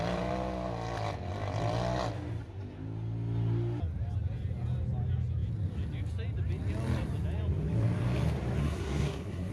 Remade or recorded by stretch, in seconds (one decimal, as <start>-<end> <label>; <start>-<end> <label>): 0.0-8.6 recorded; 8.6-9.5 remade